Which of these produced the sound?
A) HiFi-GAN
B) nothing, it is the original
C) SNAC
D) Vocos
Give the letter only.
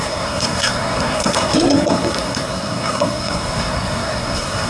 C